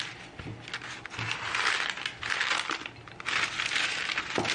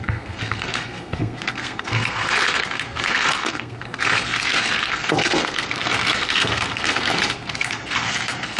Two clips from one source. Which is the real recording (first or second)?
first